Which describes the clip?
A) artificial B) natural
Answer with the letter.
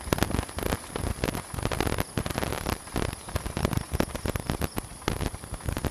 B